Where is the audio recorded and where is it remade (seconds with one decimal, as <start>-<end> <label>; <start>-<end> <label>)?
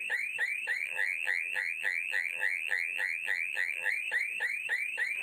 0.0-0.8 recorded; 0.8-3.9 remade; 3.9-5.2 recorded